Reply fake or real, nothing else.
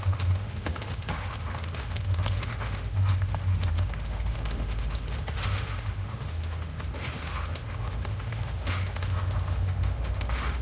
fake